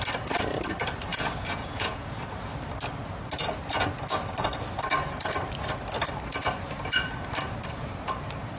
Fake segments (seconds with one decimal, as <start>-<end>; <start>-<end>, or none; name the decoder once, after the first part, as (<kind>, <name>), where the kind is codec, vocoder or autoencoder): 1.1-2.2 (vocoder, Vocos)